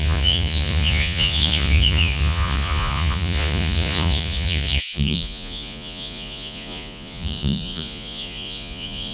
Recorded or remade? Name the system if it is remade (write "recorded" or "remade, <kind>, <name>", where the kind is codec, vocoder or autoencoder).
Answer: remade, vocoder, Vocos